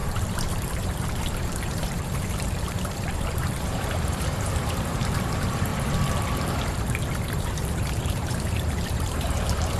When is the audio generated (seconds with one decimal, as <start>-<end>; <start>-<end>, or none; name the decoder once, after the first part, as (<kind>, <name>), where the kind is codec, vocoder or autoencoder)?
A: 0.0-5.7 (vocoder, BigVGAN v2); 7.3-9.8